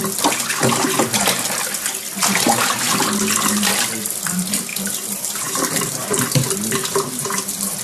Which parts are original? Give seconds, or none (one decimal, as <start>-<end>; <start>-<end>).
0.0-4.7; 6.2-6.8